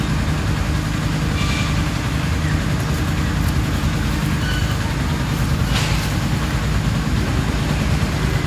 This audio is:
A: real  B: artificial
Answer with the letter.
A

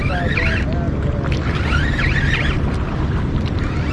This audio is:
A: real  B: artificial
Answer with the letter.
A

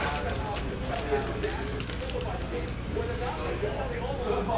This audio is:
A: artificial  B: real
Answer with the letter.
B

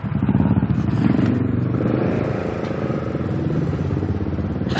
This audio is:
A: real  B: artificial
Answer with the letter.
B